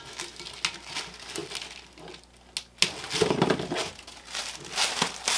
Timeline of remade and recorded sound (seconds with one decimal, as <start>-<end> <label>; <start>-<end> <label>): 0.0-5.4 recorded